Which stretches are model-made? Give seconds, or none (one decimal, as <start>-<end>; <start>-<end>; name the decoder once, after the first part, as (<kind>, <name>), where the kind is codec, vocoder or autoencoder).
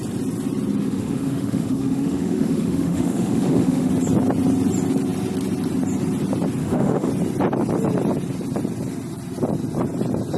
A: 0.8-3.9 (autoencoder, DAC-VAE); 6.6-7.1